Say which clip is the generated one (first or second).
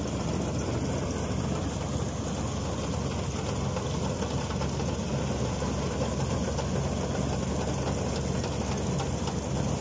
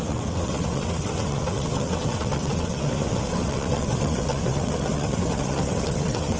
second